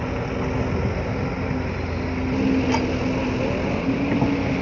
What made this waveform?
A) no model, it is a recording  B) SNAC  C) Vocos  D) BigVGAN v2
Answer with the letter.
A